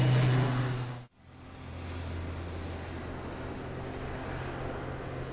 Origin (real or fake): real